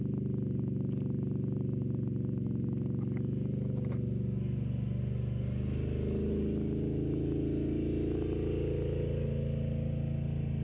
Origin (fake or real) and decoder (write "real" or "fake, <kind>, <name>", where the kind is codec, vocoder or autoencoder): real